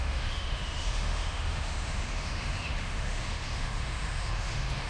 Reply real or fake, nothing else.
fake